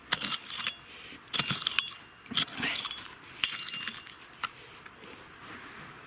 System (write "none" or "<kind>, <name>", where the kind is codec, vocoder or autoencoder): none